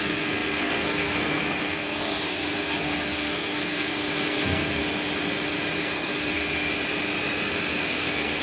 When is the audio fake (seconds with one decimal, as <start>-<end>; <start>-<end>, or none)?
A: 0.0-4.8; 5.8-6.4; 7.7-8.4